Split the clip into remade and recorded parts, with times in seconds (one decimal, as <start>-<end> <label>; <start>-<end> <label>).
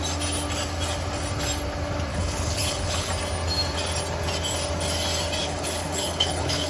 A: 0.0-2.1 recorded; 2.1-3.1 remade; 3.1-5.4 recorded; 5.4-6.7 remade